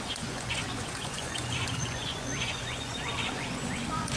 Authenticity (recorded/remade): remade